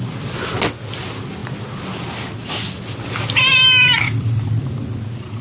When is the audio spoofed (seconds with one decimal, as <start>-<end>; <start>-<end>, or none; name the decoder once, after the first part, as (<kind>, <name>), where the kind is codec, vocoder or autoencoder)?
none